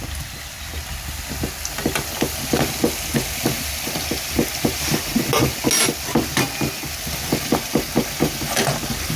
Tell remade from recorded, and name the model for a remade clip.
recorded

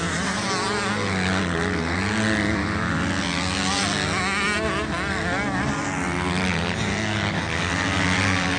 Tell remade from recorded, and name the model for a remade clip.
recorded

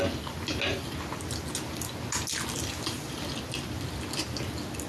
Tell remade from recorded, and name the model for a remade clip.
recorded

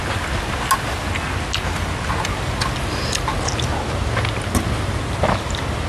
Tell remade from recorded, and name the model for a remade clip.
recorded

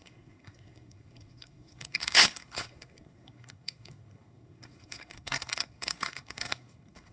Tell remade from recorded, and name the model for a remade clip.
remade, codec, SNAC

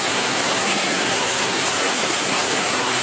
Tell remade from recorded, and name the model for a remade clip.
remade, codec, SNAC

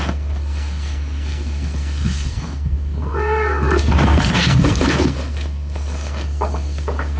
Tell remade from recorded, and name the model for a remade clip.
remade, codec, SNAC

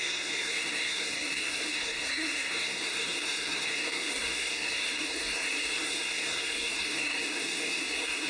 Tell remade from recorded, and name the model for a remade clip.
remade, codec, SNAC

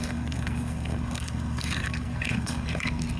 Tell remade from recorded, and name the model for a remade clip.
remade, codec, SNAC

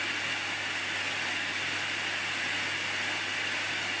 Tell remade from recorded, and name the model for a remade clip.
recorded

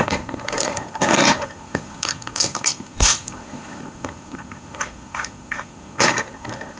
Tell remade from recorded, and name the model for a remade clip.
remade, codec, SNAC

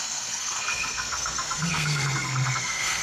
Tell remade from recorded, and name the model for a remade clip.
remade, codec, SNAC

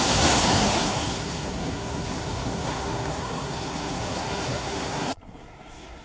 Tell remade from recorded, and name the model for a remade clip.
remade, codec, SNAC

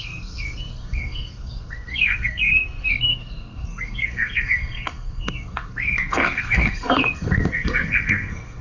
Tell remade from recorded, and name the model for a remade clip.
remade, codec, SNAC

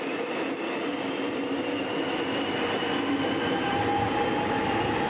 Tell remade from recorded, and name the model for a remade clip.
recorded